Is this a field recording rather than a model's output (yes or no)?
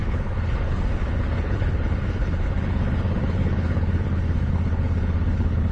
no